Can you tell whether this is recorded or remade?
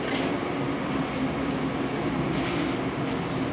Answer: recorded